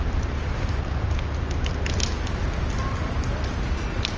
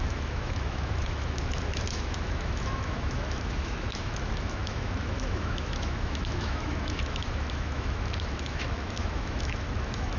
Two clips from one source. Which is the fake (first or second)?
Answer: second